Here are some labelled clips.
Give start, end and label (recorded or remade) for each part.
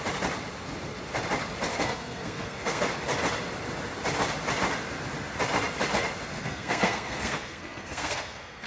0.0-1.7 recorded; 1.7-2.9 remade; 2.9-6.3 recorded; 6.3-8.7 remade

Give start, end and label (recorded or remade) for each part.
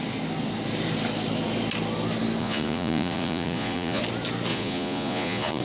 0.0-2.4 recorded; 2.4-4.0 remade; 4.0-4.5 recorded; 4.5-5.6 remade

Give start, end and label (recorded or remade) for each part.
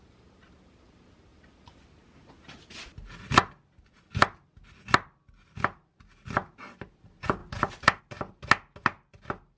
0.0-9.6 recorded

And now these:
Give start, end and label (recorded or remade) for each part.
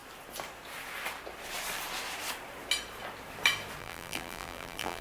0.0-3.8 recorded; 3.8-5.0 remade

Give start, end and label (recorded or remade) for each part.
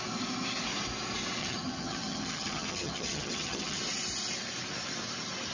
0.0-1.4 recorded; 1.4-3.8 remade; 3.8-5.5 recorded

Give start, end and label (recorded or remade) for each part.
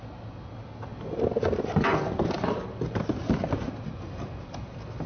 0.0-5.1 recorded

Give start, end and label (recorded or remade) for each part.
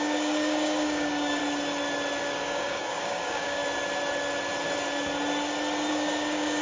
0.0-1.4 remade; 1.4-2.2 recorded; 2.2-3.6 remade; 3.6-5.9 recorded; 5.9-6.6 remade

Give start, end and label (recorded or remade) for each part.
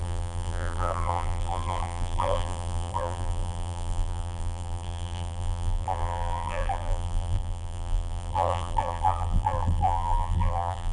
0.0-10.9 remade